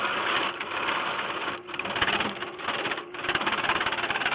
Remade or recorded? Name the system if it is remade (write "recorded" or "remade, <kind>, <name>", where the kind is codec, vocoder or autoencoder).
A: recorded